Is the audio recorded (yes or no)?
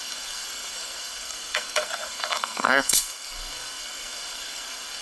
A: no